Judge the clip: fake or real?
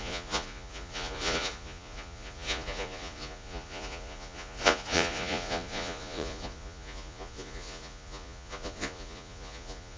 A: fake